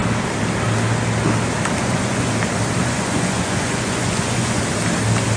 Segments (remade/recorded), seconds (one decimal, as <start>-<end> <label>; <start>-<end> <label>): 0.0-1.8 recorded; 1.8-2.3 remade; 2.3-2.8 recorded; 2.8-4.6 remade; 4.6-5.4 recorded